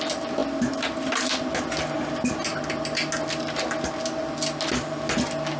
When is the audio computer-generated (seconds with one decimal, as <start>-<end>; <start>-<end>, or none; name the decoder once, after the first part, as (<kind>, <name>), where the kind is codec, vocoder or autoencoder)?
none